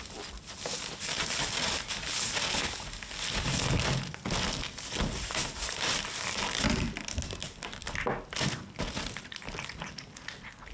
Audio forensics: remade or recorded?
recorded